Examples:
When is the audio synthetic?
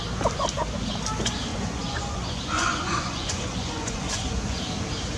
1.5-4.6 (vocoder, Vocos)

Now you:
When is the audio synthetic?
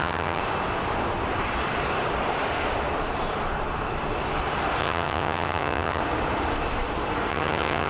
0.0-0.4 (vocoder, HiFi-GAN); 4.8-6.0; 7.3-7.9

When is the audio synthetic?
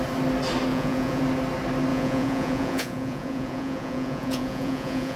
0.7-1.2 (vocoder, Vocos); 1.9-5.2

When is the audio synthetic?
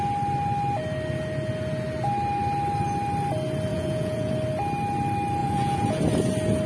3.7-4.3 (vocoder, Vocos); 5.4-6.0